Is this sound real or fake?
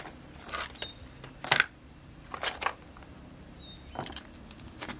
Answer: real